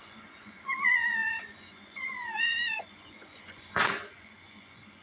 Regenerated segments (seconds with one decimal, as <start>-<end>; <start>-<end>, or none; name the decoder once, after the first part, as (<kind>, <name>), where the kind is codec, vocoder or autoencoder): 0.0-5.0 (vocoder, Vocos)